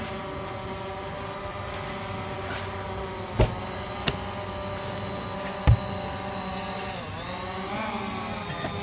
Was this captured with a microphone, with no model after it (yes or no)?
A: yes